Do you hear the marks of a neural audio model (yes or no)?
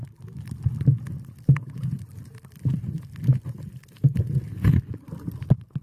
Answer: no